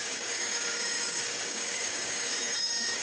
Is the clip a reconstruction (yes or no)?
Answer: yes